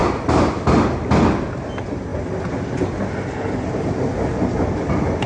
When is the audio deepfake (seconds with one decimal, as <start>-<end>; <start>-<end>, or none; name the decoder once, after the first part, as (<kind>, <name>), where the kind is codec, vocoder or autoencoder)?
none